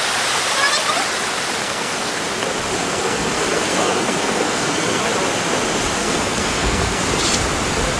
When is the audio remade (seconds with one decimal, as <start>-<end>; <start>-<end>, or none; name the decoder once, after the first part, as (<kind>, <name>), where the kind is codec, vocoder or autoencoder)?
1.6-2.1 (codec, SNAC); 2.8-5.0; 6.0-7.0